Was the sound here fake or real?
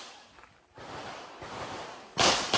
real